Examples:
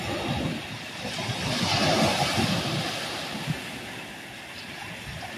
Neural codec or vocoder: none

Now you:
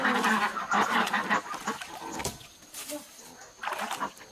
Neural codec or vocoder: none